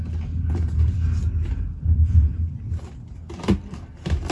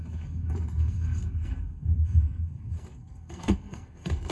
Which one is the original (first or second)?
first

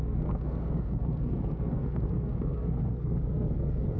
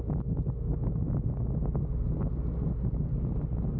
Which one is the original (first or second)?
second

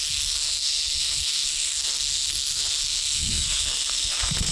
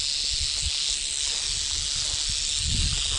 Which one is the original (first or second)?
second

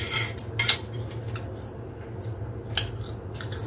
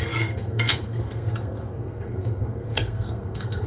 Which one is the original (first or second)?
first